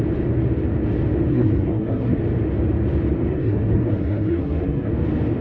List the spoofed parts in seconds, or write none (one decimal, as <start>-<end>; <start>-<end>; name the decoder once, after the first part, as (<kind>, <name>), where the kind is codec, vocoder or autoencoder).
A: 1.3-2.2 (codec, SNAC); 3.3-4.9